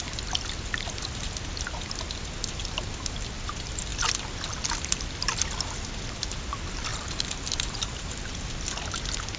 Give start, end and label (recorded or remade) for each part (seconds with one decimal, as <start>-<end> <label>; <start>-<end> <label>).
0.0-6.9 recorded; 6.9-8.2 remade; 8.2-9.4 recorded